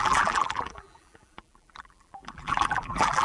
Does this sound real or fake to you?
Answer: fake